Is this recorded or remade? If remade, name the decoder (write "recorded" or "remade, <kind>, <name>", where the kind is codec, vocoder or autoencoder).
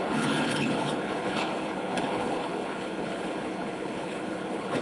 remade, codec, HILCodec